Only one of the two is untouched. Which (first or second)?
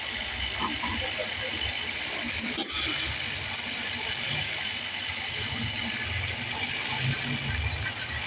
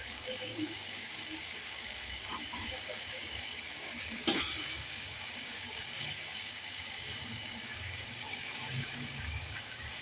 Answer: first